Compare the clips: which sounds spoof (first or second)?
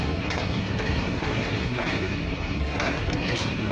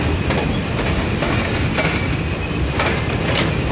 first